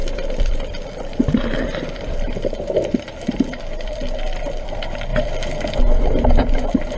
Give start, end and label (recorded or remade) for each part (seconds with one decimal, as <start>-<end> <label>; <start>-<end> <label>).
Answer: 0.0-7.0 remade